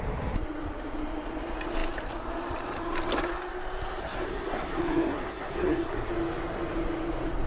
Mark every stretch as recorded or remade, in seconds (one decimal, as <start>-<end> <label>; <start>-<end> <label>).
0.0-4.0 recorded; 4.0-6.1 remade; 6.1-7.5 recorded